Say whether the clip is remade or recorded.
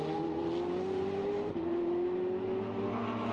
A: recorded